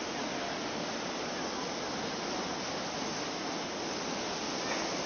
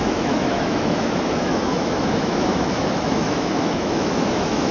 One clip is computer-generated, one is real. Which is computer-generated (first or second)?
second